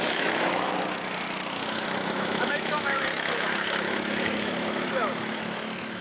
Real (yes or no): no